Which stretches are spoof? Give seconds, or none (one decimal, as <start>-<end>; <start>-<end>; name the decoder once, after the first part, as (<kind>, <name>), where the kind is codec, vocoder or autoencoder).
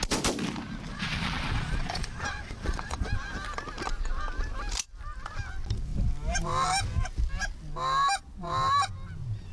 0.9-3.1 (vocoder, Vocos)